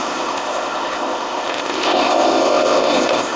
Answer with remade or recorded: remade